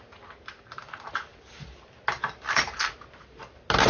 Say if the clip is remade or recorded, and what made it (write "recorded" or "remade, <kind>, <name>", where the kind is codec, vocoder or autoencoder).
recorded